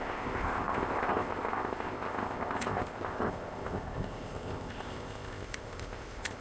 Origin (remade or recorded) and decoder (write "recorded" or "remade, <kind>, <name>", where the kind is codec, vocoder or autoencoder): remade, codec, ZipCodec